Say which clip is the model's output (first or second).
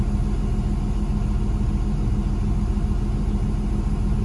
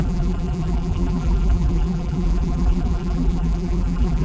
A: second